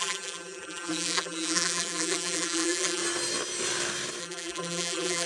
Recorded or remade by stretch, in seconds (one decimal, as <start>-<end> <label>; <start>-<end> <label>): 0.0-3.0 remade; 3.0-4.2 recorded; 4.2-5.3 remade